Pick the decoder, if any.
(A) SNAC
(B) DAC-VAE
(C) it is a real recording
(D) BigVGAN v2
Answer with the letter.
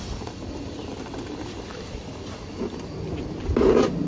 C